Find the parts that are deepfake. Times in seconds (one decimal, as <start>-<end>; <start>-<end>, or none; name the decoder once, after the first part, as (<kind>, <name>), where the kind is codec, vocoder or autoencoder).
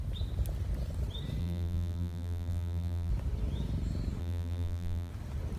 1.4-3.1 (vocoder, BigVGAN v2); 4.2-5.1